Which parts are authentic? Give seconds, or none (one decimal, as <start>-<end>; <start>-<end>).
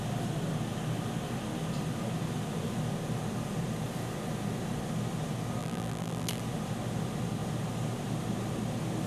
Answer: 0.0-5.6; 6.4-9.1